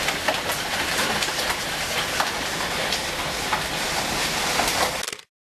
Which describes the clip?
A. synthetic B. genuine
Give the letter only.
B